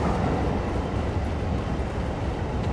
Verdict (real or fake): real